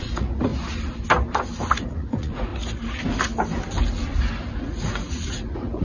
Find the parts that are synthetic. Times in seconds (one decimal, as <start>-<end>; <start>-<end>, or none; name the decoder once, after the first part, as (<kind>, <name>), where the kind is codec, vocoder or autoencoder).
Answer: 0.0-0.5 (vocoder, Vocos); 1.8-2.5; 4.6-5.8